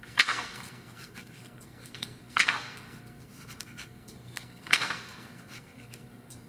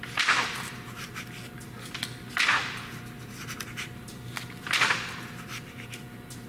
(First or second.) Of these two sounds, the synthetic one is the first